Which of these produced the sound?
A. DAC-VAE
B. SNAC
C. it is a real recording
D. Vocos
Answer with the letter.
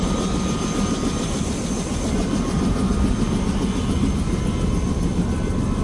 C